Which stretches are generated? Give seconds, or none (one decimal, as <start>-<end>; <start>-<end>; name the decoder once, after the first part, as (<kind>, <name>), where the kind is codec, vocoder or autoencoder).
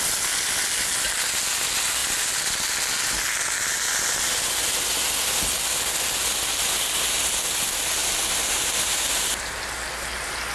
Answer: none